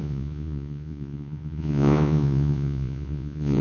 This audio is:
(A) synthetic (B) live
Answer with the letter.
A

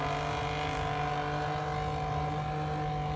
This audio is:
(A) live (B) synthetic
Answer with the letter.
A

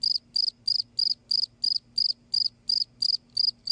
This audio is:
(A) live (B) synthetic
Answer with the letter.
A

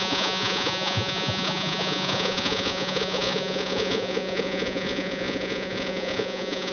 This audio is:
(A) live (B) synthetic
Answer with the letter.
B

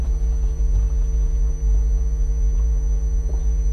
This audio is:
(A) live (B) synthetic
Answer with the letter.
B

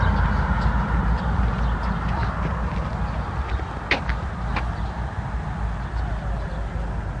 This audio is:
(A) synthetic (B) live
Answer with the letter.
B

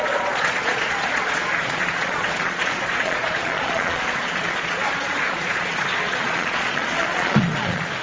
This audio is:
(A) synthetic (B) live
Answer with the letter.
A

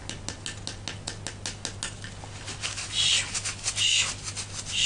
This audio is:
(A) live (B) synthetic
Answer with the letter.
A